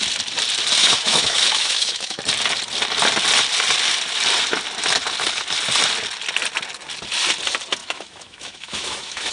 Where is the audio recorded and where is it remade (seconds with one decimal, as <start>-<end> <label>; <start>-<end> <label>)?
0.0-0.8 recorded; 0.8-2.2 remade; 2.2-7.8 recorded; 7.8-9.3 remade